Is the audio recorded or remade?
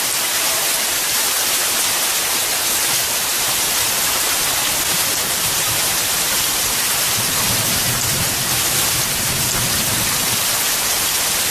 remade